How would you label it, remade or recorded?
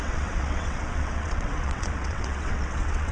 remade